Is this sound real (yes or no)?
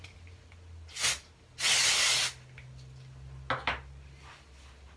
yes